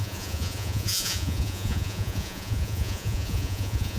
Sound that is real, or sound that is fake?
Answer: fake